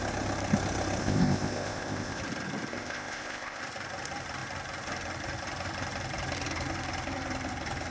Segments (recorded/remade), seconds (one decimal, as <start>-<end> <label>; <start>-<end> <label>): 0.0-1.0 recorded; 1.0-2.2 remade; 2.2-2.7 recorded; 2.7-3.6 remade; 3.6-7.9 recorded